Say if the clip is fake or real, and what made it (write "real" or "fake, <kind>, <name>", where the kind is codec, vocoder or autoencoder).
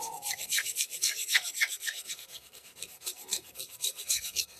fake, codec, SNAC